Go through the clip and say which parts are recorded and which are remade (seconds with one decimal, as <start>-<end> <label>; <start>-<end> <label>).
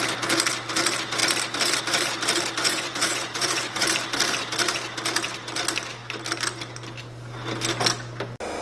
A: 0.0-2.6 recorded; 2.6-3.8 remade; 3.8-8.6 recorded